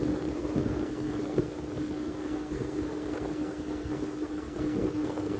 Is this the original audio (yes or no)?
no